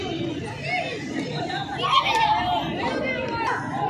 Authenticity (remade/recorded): recorded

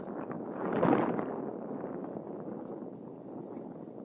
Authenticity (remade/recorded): recorded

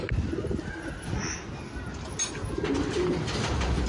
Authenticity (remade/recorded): recorded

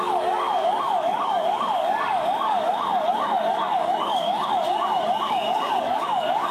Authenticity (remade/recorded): remade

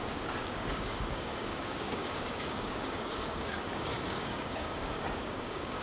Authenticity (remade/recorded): remade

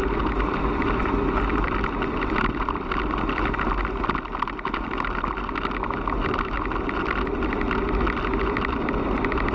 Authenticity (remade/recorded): recorded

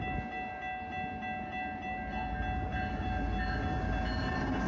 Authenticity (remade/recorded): recorded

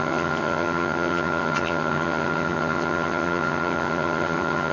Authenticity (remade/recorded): remade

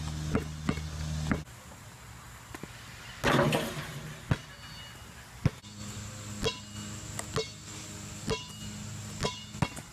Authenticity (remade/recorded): recorded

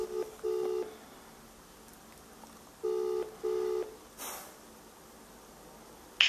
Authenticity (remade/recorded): recorded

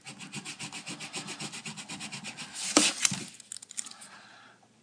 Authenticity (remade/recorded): recorded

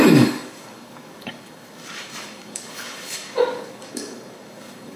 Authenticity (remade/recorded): remade